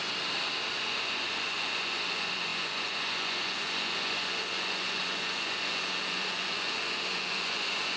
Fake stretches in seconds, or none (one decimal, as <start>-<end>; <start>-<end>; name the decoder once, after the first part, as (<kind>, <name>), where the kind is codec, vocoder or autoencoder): 0.7-8.0 (vocoder, Vocos)